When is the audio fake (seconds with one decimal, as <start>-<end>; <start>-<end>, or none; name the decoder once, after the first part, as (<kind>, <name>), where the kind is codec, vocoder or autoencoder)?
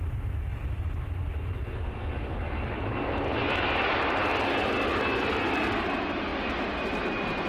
none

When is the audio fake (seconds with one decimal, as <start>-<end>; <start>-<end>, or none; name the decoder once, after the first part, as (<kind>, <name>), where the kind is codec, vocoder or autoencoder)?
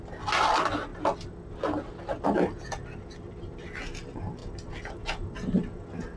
none